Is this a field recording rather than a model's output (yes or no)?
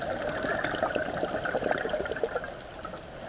yes